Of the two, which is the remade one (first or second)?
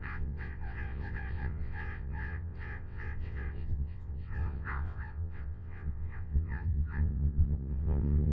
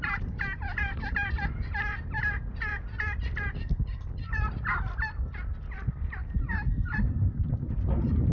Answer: first